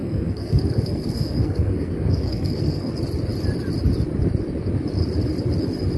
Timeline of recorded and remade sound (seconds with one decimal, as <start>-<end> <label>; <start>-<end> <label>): 0.0-2.9 remade; 2.9-6.0 recorded